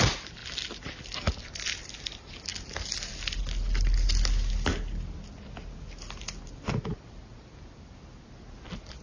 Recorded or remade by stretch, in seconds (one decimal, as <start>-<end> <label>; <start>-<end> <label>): 0.0-9.0 recorded